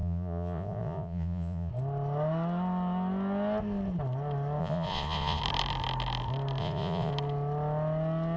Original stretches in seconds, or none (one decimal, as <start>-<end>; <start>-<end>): 1.7-4.6; 5.4-6.6; 7.1-8.4